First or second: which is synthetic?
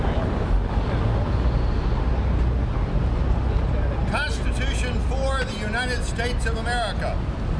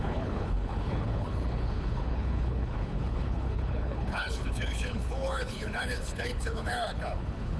second